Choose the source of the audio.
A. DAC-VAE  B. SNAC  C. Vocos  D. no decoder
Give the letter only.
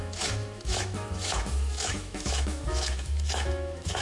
A